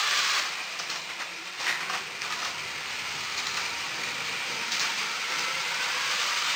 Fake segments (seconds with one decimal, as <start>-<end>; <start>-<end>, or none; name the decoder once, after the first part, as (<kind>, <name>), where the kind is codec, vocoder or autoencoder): 0.0-1.6 (vocoder, BigVGAN v2); 4.2-6.6